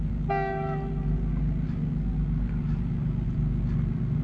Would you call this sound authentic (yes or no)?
yes